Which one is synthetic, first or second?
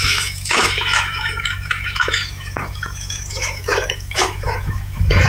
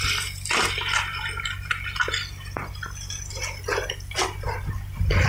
first